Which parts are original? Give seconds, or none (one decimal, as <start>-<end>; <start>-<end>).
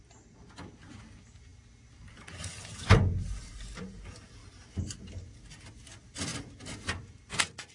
0.0-7.7